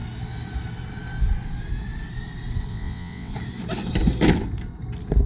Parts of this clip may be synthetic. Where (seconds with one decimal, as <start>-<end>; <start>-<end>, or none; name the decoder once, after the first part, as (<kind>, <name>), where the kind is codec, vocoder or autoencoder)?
2.7-3.3 (vocoder, WaveNeXt)